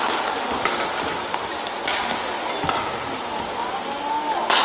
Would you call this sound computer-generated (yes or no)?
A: no